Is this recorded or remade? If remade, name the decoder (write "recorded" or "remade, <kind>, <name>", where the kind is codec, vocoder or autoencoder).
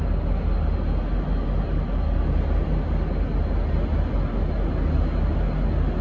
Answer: recorded